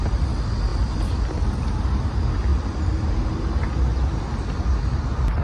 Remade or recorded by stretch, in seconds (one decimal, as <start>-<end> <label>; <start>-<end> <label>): 0.0-2.5 recorded; 2.5-4.2 remade; 4.2-5.4 recorded